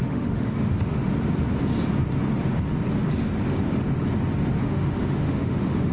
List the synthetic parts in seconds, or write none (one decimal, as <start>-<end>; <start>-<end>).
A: 0.0-1.1; 4.6-5.9